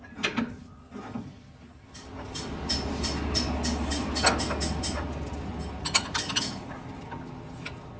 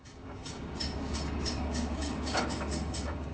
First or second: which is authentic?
first